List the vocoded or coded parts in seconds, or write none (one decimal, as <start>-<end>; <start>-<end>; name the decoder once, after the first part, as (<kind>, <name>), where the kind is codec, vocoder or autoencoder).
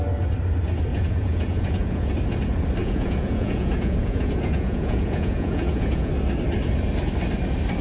0.9-2.1 (vocoder, Vocos); 2.8-6.1